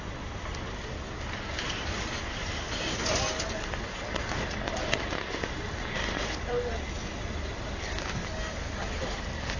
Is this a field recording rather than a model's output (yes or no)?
yes